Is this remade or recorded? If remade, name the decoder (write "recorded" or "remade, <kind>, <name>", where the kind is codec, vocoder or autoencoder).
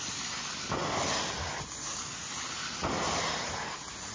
recorded